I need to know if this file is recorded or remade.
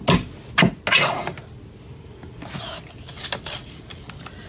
recorded